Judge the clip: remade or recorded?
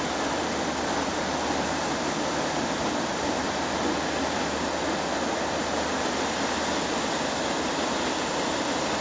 recorded